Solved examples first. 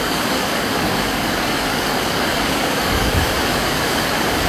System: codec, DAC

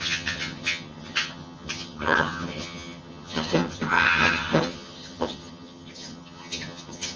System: vocoder, HiFi-GAN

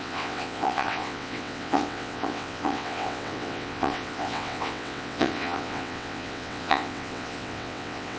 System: vocoder, WaveNeXt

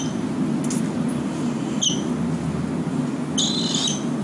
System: none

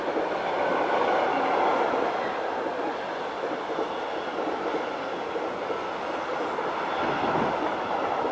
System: none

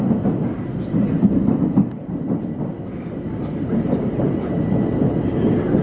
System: none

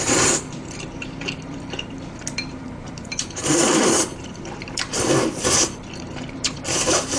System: vocoder, BigVGAN v2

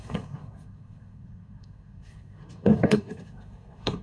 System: codec, SNAC